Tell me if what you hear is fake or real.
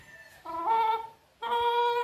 real